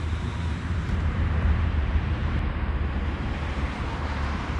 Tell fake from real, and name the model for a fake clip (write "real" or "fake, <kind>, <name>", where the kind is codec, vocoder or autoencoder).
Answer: fake, vocoder, BigVGAN v2